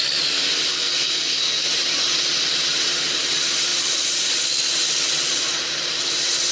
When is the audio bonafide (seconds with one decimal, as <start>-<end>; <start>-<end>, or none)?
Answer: 0.0-0.7; 1.7-6.5

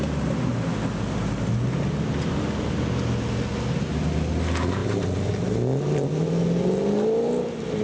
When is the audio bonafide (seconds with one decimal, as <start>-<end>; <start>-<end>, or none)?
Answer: 0.0-7.8

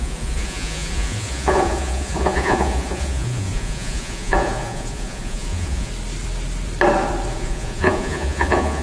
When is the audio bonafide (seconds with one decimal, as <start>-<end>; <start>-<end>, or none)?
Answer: 5.9-7.3